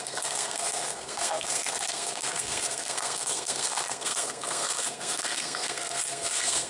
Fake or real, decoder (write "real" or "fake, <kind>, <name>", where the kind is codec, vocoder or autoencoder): fake, codec, SNAC